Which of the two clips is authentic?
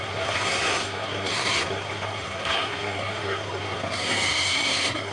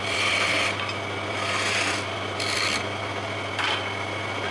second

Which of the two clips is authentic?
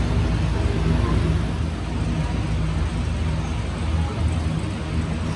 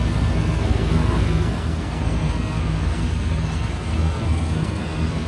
first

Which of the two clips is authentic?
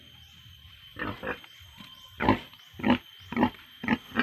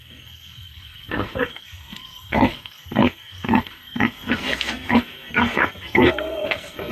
first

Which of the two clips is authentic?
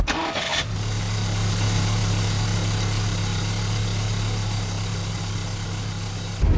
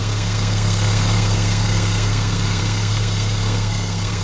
first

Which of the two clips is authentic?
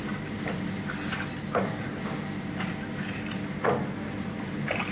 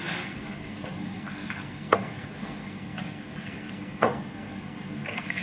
first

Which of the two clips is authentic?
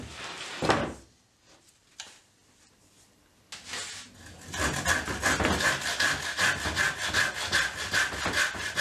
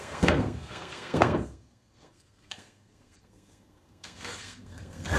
first